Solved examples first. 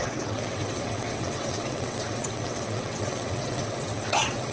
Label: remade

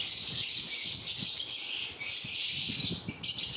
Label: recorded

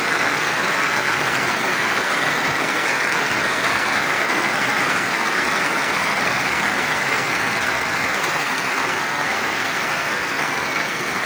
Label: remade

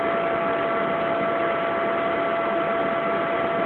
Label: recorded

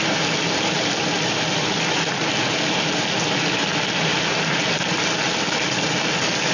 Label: recorded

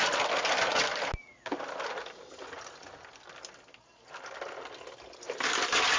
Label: recorded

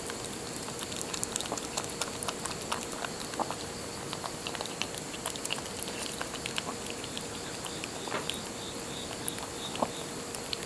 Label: recorded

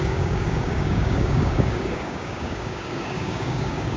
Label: remade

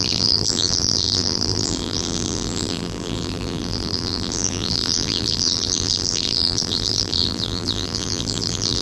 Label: remade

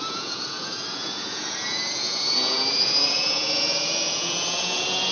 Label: remade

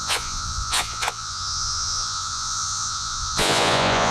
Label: remade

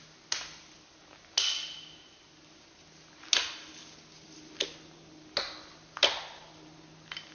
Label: recorded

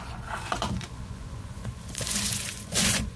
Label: remade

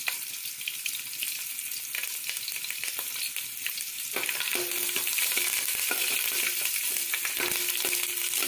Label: recorded